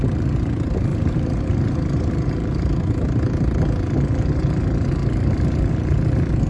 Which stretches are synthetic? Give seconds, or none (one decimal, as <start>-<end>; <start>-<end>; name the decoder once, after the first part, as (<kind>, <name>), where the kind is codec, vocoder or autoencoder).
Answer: 0.9-2.1 (vocoder, BigVGAN v2); 5.0-5.6